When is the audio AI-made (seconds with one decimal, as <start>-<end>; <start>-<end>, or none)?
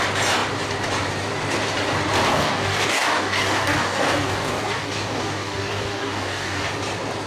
2.3-6.7